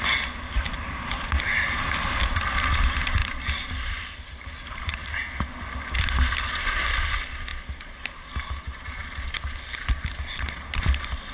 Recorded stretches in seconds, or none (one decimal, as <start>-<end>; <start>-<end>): 0.0-3.2; 5.3-11.3